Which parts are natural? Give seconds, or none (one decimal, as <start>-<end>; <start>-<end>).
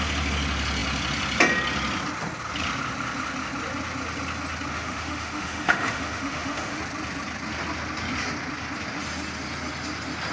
0.0-4.7; 6.8-10.3